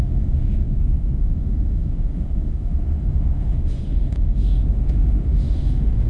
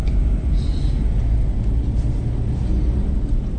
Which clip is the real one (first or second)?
second